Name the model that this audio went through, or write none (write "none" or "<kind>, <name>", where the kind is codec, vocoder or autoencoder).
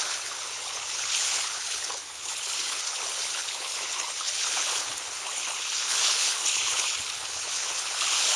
codec, HILCodec